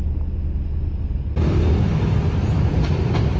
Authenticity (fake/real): real